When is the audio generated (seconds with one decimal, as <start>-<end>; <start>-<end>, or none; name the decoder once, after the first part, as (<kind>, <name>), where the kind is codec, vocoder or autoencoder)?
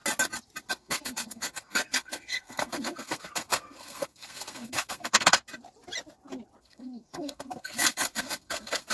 0.7-5.4 (codec, SNAC); 6.6-8.9